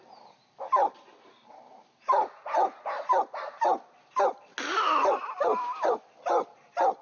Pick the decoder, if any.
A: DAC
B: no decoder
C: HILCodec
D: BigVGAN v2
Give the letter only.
B